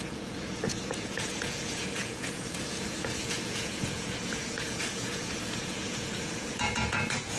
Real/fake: fake